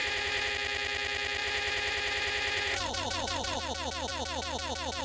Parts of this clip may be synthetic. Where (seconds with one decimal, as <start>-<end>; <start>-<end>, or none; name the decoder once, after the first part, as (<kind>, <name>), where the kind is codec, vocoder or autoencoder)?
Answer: 0.0-0.5 (vocoder, Vocos); 1.4-3.6